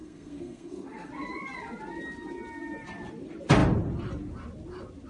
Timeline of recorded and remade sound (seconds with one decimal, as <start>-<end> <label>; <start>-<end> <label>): 0.0-1.1 remade; 1.1-5.1 recorded